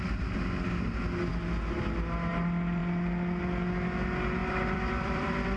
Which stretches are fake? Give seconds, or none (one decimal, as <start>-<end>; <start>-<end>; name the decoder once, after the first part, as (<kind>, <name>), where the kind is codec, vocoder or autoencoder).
4.4-5.6 (vocoder, BigVGAN v2)